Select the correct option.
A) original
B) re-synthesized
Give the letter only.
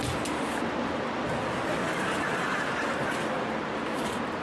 A